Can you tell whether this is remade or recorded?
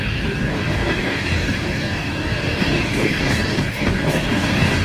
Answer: remade